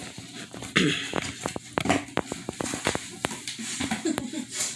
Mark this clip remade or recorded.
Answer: recorded